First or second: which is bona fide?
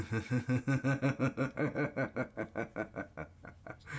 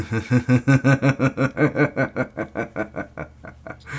second